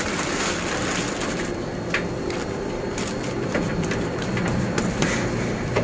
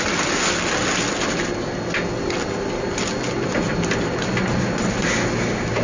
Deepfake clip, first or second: first